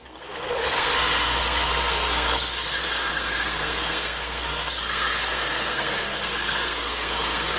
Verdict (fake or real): fake